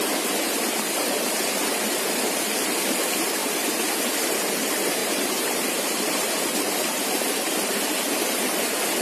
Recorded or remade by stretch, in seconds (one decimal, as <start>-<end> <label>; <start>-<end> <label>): 0.0-5.0 recorded; 5.0-7.2 remade; 7.2-9.0 recorded